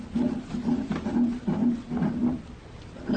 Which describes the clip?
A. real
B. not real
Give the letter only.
A